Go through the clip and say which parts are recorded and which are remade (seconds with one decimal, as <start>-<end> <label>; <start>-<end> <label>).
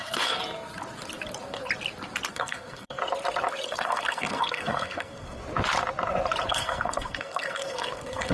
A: 0.0-0.4 remade; 0.4-2.3 recorded; 2.3-3.0 remade; 3.0-3.7 recorded; 3.7-5.4 remade; 5.4-6.5 recorded; 6.5-8.3 remade